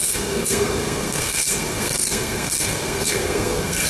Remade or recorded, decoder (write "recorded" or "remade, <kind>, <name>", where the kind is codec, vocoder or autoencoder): remade, codec, SNAC